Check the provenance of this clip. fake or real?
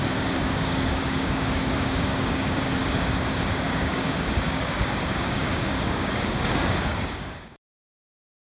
fake